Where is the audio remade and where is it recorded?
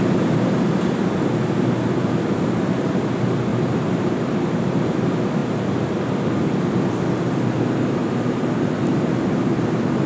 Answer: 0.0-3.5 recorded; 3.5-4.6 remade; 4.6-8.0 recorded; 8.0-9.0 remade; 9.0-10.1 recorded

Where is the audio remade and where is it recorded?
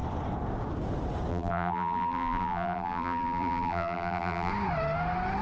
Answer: 0.0-1.3 recorded; 1.3-4.5 remade; 4.5-5.4 recorded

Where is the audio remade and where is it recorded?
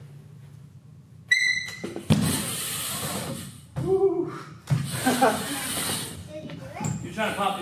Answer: 0.0-7.6 recorded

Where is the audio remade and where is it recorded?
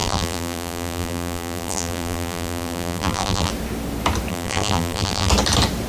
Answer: 0.0-3.5 remade; 3.5-4.3 recorded; 4.3-5.3 remade; 5.3-5.9 recorded